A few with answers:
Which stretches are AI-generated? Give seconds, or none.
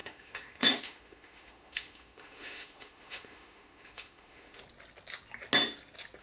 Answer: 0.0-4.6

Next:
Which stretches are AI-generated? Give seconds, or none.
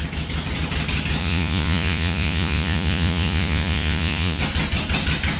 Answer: 1.2-4.4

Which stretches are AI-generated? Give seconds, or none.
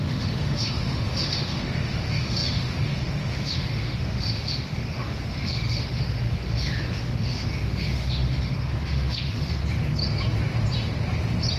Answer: 0.0-9.6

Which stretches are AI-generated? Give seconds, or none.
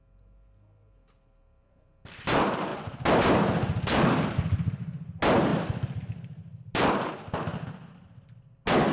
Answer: none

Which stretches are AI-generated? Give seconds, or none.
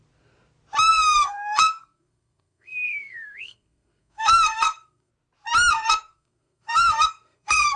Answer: 0.9-5.1; 5.7-7.8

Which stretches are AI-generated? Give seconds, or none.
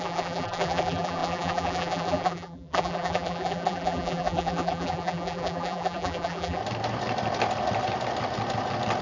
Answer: 0.0-6.6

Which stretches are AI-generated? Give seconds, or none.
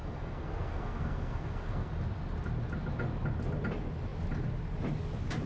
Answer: 0.0-1.9